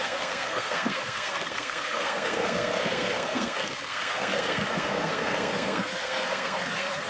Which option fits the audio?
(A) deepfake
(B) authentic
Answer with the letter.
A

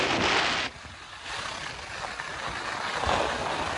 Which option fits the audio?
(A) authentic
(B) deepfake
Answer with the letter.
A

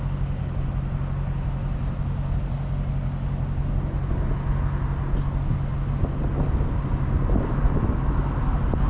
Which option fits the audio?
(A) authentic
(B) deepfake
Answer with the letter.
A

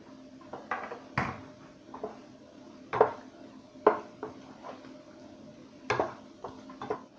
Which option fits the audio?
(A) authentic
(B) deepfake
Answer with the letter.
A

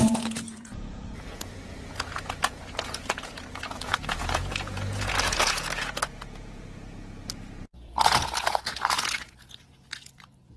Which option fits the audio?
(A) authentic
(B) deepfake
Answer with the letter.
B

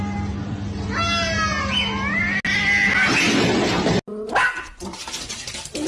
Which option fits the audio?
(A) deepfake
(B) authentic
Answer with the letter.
B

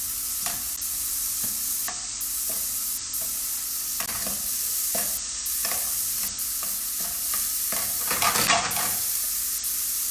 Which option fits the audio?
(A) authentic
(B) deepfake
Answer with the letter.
B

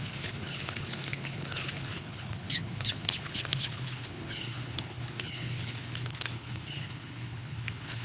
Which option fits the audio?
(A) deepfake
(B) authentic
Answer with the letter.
A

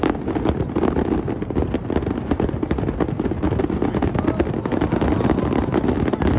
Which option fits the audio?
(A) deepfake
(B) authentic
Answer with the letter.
B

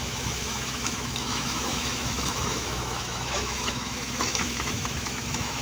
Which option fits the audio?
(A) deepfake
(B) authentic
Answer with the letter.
A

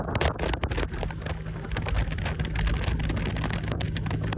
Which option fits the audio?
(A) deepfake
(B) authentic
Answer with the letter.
B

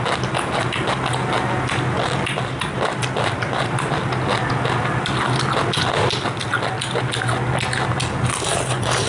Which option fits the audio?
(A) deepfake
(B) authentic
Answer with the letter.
B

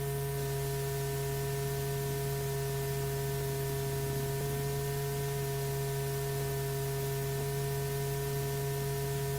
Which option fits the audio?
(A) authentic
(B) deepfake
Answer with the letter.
A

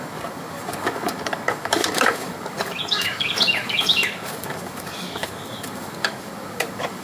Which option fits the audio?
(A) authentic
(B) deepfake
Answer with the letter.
B